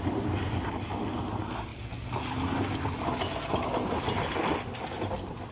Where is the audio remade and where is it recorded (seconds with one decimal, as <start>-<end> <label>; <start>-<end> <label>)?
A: 0.0-5.5 recorded